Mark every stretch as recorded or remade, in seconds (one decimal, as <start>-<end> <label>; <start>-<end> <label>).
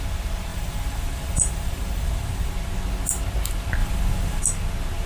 0.0-0.5 recorded; 0.5-2.5 remade; 2.5-3.8 recorded; 3.8-4.4 remade; 4.4-5.1 recorded